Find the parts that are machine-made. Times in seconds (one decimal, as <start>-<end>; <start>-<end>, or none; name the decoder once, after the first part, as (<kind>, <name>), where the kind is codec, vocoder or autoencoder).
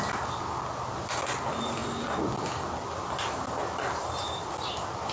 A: none